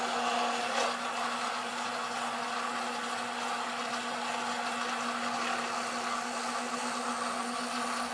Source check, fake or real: real